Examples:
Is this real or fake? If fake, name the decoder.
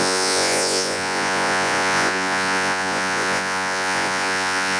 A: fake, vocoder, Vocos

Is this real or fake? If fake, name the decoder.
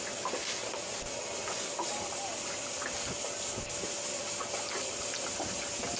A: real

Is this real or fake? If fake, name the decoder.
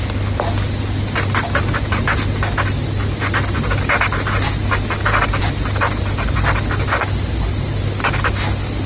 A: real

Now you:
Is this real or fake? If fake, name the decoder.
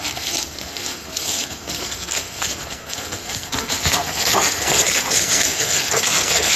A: fake, codec, SNAC